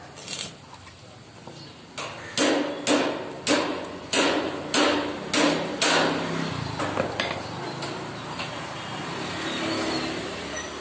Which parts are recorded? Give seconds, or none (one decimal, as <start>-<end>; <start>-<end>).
0.0-3.7; 4.5-10.8